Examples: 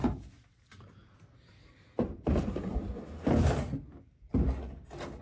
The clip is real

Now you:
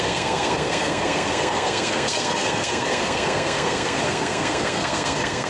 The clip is fake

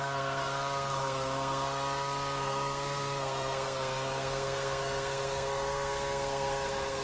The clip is fake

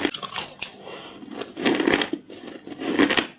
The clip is real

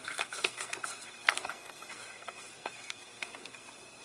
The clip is fake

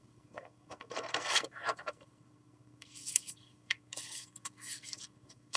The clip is fake